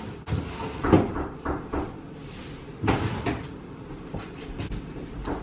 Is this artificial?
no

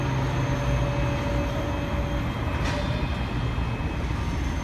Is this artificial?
no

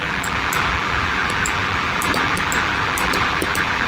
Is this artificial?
yes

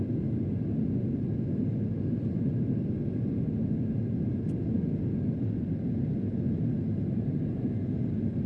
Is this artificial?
no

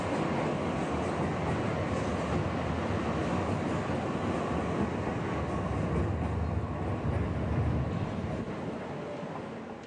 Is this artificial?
no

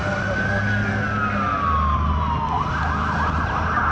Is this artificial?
no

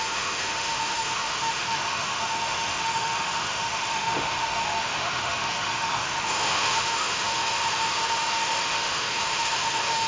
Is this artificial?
yes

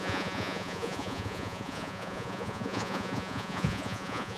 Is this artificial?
yes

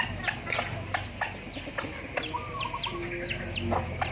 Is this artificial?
no